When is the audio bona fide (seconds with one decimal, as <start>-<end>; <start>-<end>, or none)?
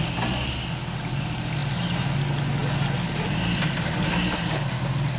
0.0-5.2